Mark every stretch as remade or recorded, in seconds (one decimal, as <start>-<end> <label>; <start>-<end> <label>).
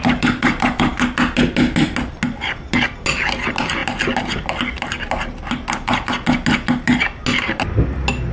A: 0.0-8.3 recorded